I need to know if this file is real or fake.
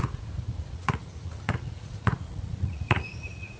fake